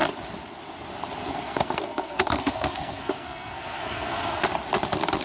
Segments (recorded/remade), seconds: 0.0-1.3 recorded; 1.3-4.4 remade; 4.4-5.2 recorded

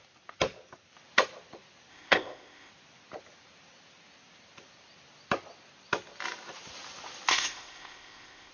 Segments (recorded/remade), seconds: 0.0-1.9 recorded; 1.9-2.7 remade; 2.7-7.3 recorded; 7.3-8.5 remade

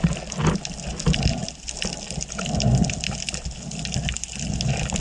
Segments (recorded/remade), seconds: 0.0-5.0 recorded

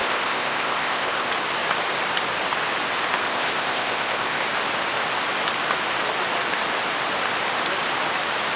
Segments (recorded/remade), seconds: 0.0-1.3 remade; 1.3-3.2 recorded; 3.2-4.4 remade; 4.4-8.6 recorded

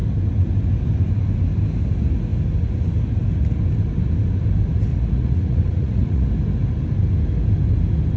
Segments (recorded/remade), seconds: 0.0-4.9 recorded; 4.9-6.3 remade; 6.3-8.2 recorded

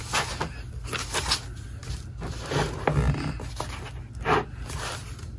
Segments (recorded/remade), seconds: 0.0-5.4 recorded

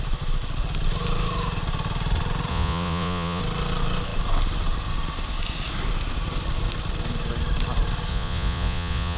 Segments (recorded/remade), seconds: 0.0-2.5 recorded; 2.5-3.4 remade; 3.4-8.1 recorded; 8.1-9.2 remade

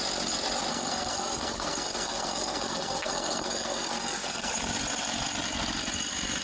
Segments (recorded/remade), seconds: 0.0-0.7 recorded; 0.7-4.5 remade; 4.5-6.4 recorded